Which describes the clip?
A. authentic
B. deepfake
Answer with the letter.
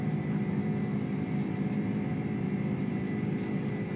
A